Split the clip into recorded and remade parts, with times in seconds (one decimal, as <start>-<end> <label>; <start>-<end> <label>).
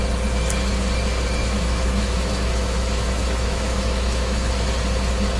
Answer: 0.0-1.4 recorded; 1.4-4.5 remade; 4.5-5.4 recorded